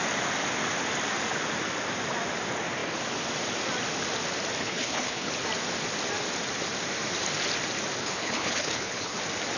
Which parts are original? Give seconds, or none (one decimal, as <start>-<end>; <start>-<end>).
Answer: 0.0-4.6; 5.3-8.0; 9.2-9.6